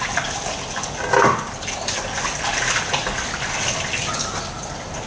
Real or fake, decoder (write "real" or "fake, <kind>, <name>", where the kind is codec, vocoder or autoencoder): real